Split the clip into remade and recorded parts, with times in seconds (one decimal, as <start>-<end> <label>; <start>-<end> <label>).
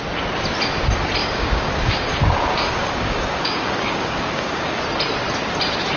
0.0-1.2 recorded; 1.2-4.8 remade; 4.8-6.0 recorded